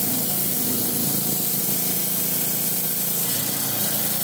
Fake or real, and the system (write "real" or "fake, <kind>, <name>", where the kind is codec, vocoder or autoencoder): real